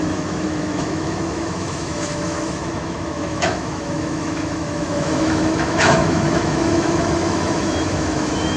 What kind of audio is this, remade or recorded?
remade